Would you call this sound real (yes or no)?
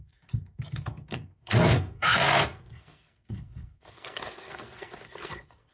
no